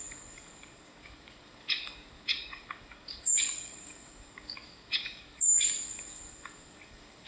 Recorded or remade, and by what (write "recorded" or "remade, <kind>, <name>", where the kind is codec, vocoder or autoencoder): remade, codec, DAC